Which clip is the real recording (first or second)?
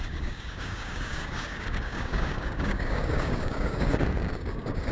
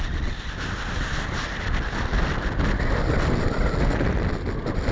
second